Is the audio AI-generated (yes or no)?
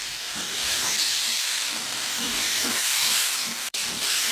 yes